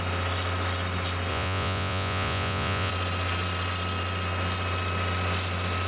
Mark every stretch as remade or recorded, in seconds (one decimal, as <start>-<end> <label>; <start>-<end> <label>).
0.0-1.3 recorded; 1.3-2.9 remade; 2.9-5.9 recorded